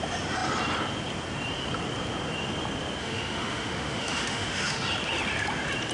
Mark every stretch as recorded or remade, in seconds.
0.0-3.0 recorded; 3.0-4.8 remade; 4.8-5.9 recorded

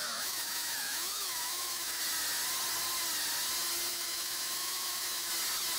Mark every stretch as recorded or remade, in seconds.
0.0-2.0 remade; 2.0-3.9 recorded; 3.9-5.3 remade; 5.3-5.8 recorded